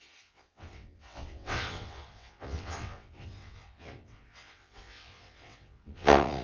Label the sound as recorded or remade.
remade